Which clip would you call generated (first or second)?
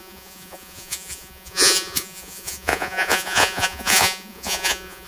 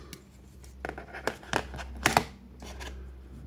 first